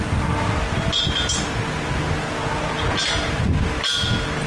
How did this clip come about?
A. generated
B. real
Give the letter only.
B